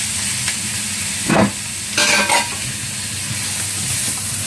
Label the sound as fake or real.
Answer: real